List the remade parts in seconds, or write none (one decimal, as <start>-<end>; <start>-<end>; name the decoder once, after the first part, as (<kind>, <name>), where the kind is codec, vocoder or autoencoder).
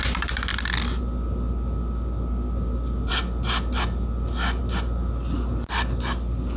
none